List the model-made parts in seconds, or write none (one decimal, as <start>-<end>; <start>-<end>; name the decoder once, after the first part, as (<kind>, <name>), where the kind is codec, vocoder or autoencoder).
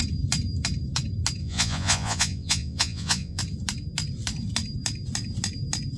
1.4-3.4 (vocoder, Vocos)